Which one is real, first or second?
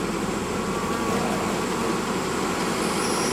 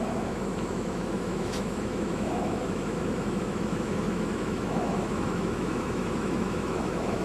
first